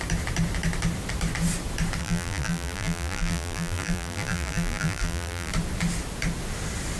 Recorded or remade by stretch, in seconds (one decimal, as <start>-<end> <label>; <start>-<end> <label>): 0.0-2.0 recorded; 2.0-5.5 remade; 5.5-7.0 recorded